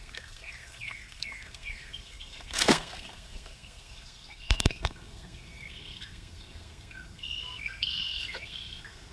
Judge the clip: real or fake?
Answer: fake